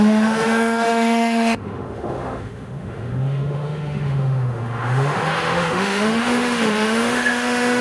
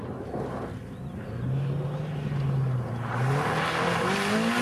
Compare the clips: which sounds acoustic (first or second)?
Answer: second